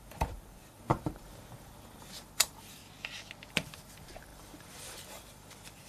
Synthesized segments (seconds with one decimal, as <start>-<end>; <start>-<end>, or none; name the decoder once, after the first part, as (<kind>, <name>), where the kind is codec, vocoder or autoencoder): 0.0-2.8 (vocoder, BigVGAN v2); 3.5-5.9